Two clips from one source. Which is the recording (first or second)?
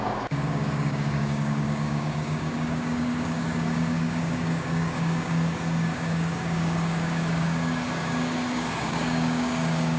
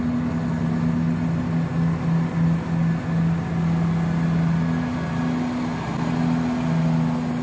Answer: second